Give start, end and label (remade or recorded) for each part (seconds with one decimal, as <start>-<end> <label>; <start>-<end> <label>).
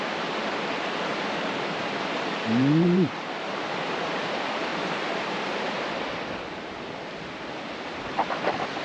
0.0-1.1 recorded; 1.1-4.2 remade; 4.2-4.7 recorded; 4.7-5.8 remade; 5.8-8.8 recorded